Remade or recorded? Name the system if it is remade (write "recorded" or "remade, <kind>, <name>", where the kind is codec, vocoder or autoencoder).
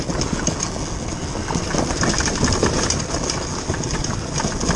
recorded